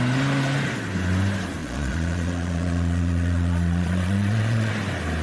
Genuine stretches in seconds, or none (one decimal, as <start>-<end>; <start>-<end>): 0.0-1.6; 4.7-5.2